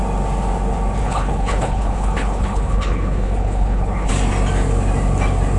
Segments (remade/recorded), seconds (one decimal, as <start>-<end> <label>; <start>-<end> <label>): 0.0-1.0 recorded; 1.0-4.1 remade; 4.1-5.6 recorded